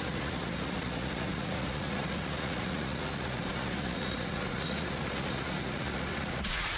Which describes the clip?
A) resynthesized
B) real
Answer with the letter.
A